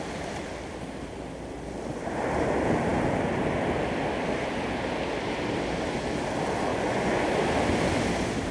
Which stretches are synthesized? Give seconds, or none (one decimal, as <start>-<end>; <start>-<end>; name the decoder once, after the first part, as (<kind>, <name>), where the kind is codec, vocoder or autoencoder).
6.7-7.3 (vocoder, Vocos)